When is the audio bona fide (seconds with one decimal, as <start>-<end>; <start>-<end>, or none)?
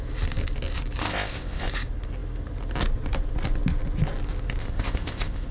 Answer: 0.0-1.0; 1.7-4.6